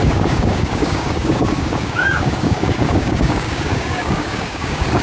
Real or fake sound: fake